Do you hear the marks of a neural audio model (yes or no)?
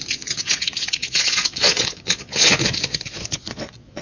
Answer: yes